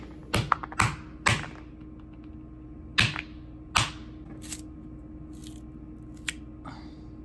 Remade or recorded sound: recorded